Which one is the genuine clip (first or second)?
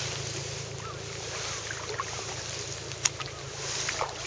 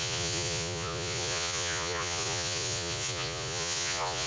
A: first